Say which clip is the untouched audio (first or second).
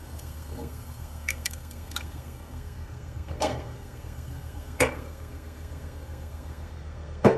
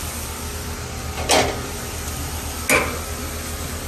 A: second